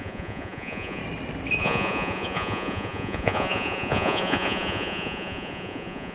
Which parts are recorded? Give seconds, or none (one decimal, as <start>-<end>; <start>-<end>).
1.0-1.6